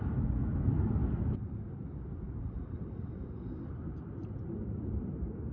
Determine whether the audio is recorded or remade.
recorded